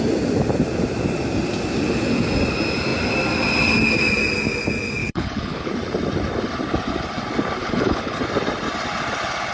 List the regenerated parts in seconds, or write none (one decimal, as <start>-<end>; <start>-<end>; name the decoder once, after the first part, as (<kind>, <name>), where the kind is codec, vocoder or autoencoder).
5.0-5.7 (codec, HILCodec); 7.6-8.2